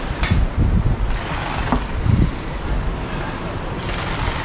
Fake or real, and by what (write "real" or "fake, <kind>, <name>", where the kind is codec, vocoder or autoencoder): real